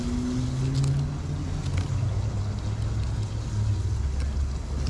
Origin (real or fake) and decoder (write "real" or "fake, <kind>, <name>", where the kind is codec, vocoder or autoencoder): real